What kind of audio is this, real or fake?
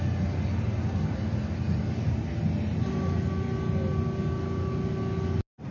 real